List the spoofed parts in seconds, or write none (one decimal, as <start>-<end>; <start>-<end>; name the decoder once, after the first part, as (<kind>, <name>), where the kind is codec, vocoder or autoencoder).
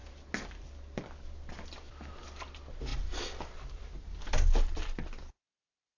none